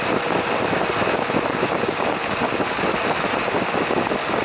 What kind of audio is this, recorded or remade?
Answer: recorded